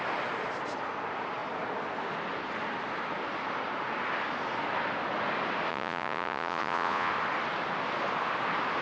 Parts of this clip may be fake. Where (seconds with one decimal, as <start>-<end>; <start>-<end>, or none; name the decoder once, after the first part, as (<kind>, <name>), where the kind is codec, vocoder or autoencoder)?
5.7-7.1 (vocoder, Vocos)